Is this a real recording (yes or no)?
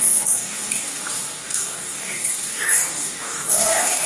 no